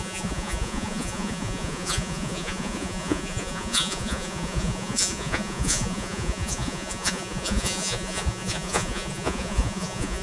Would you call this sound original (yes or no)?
no